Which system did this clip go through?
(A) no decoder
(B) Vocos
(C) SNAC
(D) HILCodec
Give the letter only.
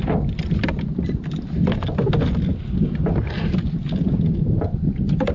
A